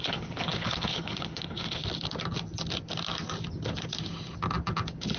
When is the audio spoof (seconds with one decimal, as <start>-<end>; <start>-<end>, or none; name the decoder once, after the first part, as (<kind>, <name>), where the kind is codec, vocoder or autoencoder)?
0.0-1.8 (codec, HILCodec)